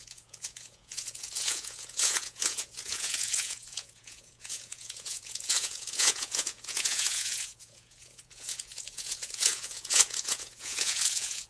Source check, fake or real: fake